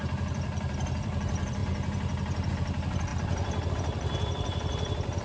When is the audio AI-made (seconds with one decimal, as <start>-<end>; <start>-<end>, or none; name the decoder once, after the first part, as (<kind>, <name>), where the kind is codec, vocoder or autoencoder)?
0.0-1.6 (vocoder, BigVGAN v2); 2.5-5.2